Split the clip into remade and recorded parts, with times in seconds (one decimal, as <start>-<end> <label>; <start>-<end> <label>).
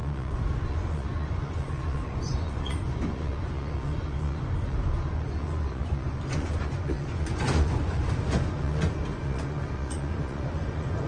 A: 0.0-11.1 remade